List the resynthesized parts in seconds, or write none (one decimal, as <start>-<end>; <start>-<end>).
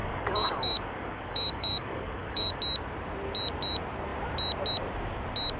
0.0-2.6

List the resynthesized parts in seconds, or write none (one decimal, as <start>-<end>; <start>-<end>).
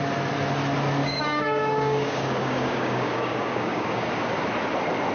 1.0-4.1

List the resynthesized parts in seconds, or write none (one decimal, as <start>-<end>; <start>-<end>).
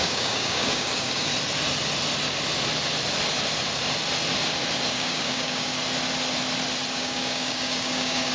0.0-1.3; 4.9-5.7; 6.9-8.3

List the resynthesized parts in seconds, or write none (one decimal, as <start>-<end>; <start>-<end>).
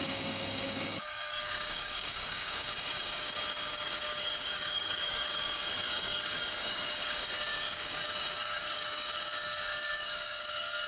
0.0-10.9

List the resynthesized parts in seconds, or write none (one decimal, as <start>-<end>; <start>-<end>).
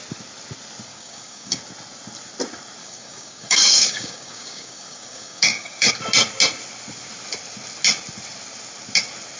0.9-1.6; 2.8-5.9